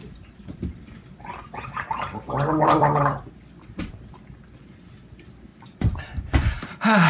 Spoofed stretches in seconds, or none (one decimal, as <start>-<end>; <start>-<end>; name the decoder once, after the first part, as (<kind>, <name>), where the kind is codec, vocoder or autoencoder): 0.0-3.9 (vocoder, BigVGAN v2)